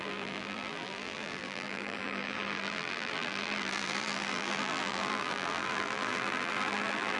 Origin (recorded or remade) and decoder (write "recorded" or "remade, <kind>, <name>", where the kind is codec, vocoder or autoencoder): remade, vocoder, BigVGAN v2